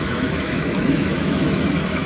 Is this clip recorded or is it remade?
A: remade